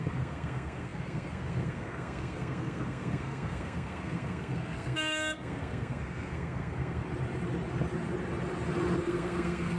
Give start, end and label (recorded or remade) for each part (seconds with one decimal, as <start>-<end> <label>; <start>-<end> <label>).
0.0-7.0 remade; 7.0-9.0 recorded; 9.0-9.8 remade